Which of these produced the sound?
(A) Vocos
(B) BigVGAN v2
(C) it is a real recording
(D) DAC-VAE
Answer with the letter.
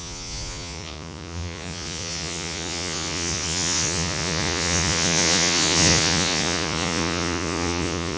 A